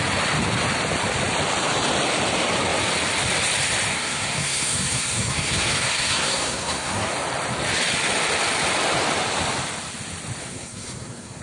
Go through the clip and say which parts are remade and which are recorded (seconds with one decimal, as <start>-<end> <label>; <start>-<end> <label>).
0.0-3.9 recorded; 3.9-7.1 remade; 7.1-10.4 recorded; 10.4-11.4 remade